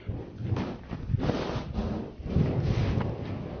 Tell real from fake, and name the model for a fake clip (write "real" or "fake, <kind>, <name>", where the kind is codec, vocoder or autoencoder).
real